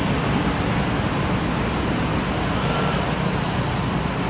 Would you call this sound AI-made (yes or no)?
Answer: no